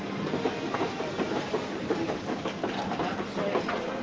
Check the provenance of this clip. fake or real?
real